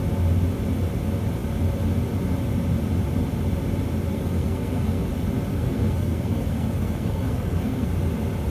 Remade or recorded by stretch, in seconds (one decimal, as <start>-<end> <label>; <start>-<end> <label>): 0.0-4.1 recorded; 4.1-5.1 remade; 5.1-5.5 recorded; 5.5-7.9 remade; 7.9-8.5 recorded